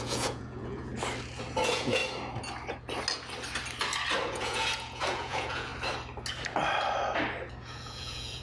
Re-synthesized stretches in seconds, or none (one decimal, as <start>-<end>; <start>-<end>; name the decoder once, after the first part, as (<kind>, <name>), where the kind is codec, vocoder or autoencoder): 0.0-0.9 (vocoder, Vocos); 1.6-2.0; 4.3-5.7; 7.6-8.4